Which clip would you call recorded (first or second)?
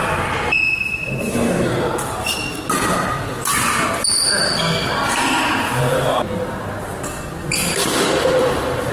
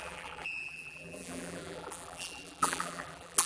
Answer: first